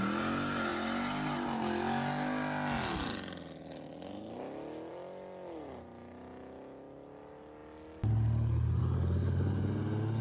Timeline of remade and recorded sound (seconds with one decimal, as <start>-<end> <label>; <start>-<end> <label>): 0.0-10.2 recorded